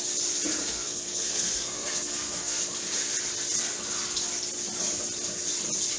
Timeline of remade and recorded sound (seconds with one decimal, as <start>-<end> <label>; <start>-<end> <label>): 0.0-0.6 recorded; 0.6-2.6 remade; 2.6-6.0 recorded